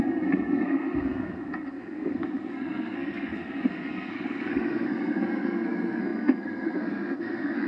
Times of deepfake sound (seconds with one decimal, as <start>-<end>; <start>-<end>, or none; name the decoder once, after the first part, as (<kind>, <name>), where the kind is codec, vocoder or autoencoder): 0.0-7.7 (codec, SNAC)